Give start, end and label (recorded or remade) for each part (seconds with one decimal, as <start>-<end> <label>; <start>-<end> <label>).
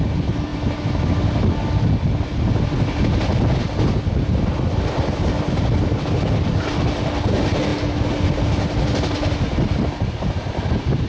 0.0-11.1 recorded